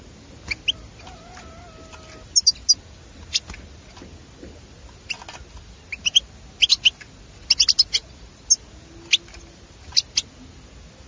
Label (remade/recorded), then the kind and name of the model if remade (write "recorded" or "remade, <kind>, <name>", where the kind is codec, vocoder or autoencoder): recorded